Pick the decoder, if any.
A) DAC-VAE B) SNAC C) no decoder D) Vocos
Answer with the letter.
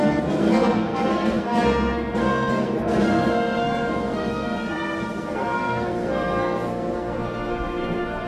B